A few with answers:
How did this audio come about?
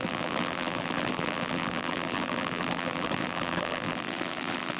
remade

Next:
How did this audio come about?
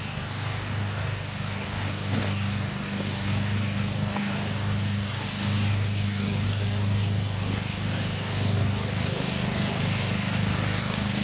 remade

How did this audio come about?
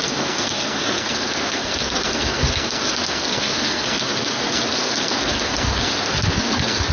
remade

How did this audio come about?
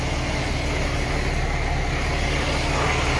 recorded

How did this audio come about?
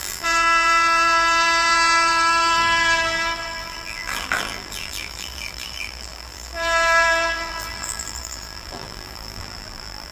remade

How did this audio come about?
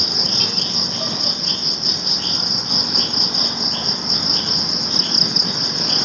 recorded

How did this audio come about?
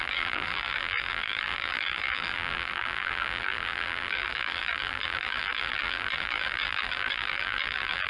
remade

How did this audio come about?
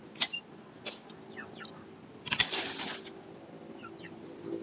recorded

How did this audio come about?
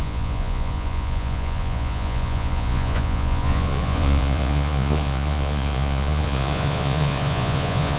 remade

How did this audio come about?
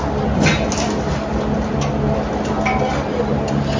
recorded